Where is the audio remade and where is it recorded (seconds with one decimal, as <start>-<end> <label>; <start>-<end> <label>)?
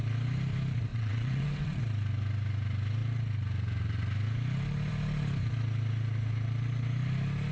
0.0-0.9 recorded; 0.9-1.8 remade; 1.8-7.5 recorded